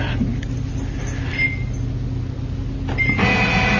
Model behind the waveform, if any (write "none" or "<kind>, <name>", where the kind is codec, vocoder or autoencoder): none